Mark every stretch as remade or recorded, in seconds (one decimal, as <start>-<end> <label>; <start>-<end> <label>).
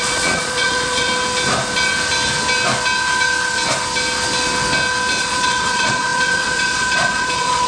0.0-1.1 remade; 1.1-5.2 recorded; 5.2-7.7 remade